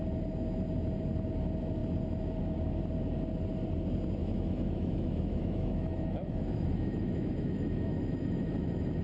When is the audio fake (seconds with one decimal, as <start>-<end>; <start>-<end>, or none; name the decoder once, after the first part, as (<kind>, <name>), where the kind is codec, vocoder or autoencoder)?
4.2-9.0 (autoencoder, DAC-VAE)